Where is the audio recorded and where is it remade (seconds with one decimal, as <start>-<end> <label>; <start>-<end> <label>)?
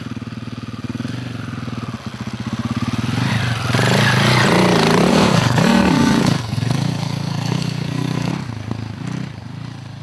0.0-5.1 recorded; 5.1-8.3 remade; 8.3-10.0 recorded